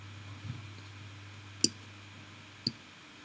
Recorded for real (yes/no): yes